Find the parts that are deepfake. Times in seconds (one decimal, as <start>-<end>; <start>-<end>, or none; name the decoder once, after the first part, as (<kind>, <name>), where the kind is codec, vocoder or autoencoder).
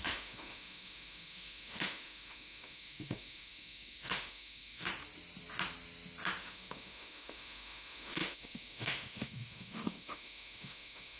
0.0-4.9 (autoencoder, DAC-VAE); 6.4-11.2